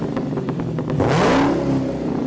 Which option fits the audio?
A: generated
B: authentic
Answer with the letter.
B